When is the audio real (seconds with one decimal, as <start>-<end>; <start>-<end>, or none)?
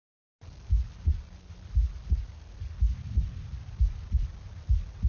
0.0-5.1